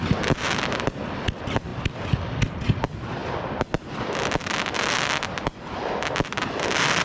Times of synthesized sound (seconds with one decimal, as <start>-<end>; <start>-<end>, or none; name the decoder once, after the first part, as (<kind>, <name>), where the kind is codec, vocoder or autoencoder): none